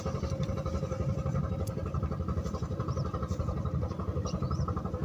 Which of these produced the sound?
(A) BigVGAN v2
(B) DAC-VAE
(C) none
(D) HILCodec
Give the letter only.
A